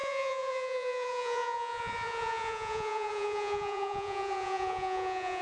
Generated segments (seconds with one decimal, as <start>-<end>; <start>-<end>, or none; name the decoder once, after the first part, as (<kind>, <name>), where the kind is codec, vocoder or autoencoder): 0.0-5.4 (vocoder, Vocos)